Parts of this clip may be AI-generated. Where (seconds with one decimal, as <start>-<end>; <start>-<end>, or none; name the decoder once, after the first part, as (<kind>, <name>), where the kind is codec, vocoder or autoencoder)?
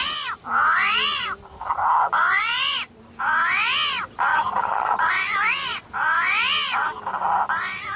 4.3-5.1 (vocoder, HiFi-GAN)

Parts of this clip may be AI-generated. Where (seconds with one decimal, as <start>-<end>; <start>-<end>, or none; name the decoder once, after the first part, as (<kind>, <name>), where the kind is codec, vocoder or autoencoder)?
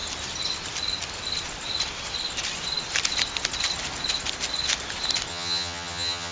5.3-6.3 (vocoder, HiFi-GAN)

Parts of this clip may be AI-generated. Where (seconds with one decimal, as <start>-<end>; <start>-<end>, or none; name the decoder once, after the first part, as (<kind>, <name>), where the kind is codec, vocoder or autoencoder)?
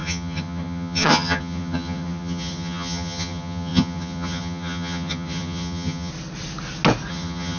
0.0-6.1 (vocoder, HiFi-GAN); 7.1-7.6